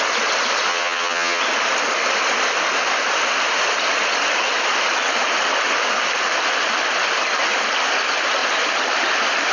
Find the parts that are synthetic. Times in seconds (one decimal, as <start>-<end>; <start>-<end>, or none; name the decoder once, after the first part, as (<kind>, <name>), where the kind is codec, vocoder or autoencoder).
0.7-1.4 (vocoder, HiFi-GAN)